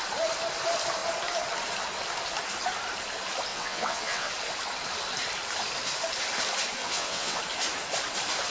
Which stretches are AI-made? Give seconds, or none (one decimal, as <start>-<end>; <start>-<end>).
3.5-4.3; 6.8-7.4